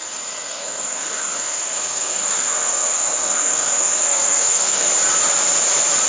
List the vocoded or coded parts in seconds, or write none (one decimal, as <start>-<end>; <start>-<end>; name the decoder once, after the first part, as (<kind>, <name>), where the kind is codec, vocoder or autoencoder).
0.0-4.9 (codec, SNAC)